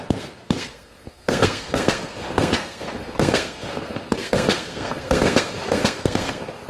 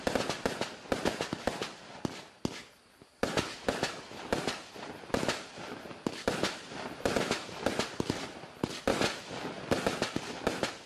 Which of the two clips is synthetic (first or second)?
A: first